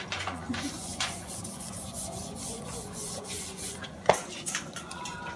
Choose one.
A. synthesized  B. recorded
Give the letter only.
A